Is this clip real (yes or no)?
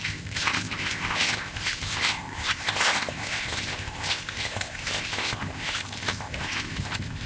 no